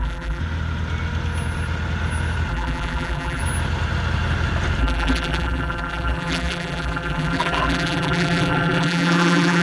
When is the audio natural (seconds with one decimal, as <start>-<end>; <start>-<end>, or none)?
0.4-2.5; 3.4-4.8